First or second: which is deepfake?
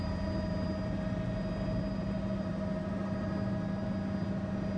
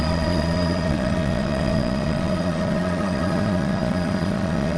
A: second